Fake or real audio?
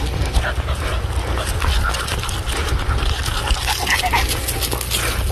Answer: real